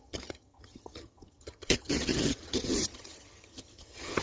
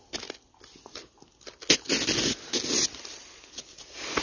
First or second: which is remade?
first